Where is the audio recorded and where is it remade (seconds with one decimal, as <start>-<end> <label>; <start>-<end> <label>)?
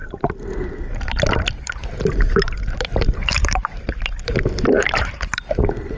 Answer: 0.0-1.2 remade; 1.2-1.8 recorded; 1.8-5.4 remade; 5.4-6.0 recorded